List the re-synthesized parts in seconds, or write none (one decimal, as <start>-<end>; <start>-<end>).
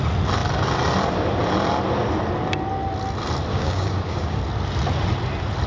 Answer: 3.5-4.4